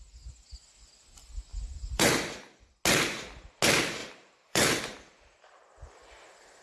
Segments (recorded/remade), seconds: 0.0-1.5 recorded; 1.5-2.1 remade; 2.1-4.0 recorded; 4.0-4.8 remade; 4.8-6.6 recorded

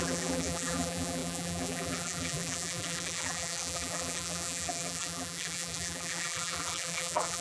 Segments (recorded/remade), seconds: 0.0-7.4 remade

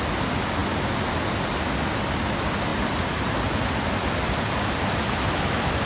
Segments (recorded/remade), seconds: 0.0-2.7 recorded; 2.7-5.9 remade

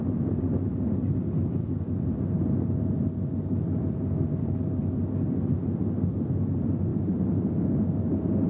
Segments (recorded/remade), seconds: 0.0-6.9 recorded; 6.9-7.8 remade; 7.8-8.5 recorded

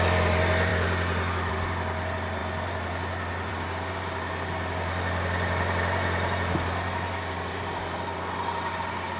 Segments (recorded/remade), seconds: 0.0-9.2 recorded

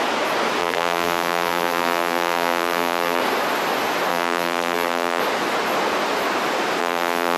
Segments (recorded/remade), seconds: 0.0-0.6 recorded; 0.6-3.2 remade; 3.2-4.1 recorded; 4.1-5.2 remade; 5.2-6.8 recorded; 6.8-7.4 remade